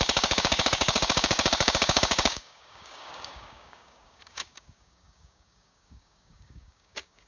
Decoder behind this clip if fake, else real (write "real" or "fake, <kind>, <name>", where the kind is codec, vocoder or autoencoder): fake, codec, DAC